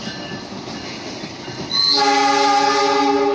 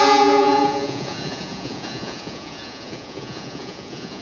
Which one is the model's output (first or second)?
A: second